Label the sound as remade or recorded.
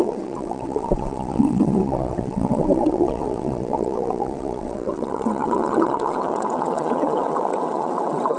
remade